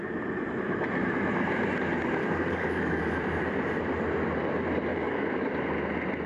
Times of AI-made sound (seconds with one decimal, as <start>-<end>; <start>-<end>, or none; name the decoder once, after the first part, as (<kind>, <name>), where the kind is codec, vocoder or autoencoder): 2.2-3.0 (codec, DAC); 4.9-5.5